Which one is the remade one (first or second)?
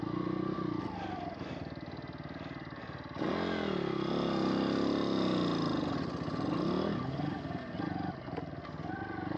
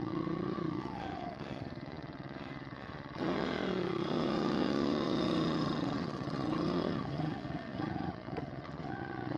second